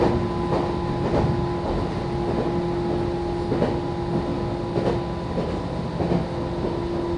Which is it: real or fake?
real